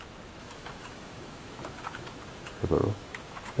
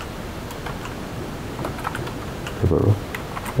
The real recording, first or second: second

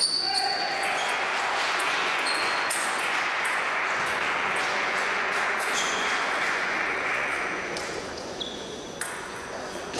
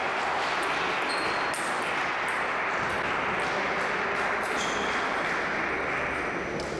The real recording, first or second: second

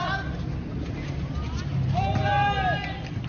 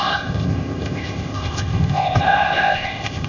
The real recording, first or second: first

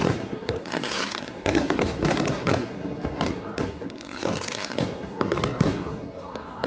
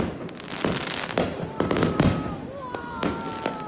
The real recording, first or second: second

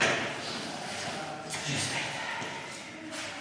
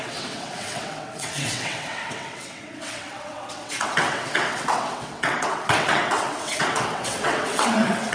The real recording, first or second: first